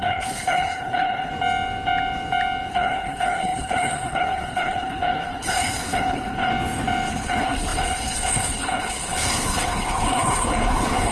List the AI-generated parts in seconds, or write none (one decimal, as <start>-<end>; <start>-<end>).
0.0-1.3; 2.7-6.5; 7.1-11.1